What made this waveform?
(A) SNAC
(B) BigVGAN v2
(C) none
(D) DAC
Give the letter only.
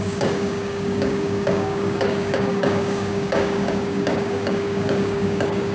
D